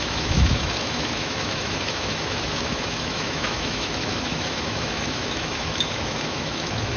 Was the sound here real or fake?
fake